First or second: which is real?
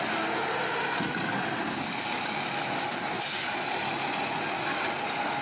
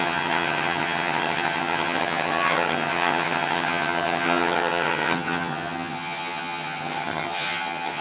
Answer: first